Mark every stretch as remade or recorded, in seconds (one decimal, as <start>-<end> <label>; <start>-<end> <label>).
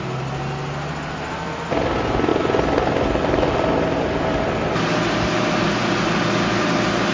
0.0-7.1 recorded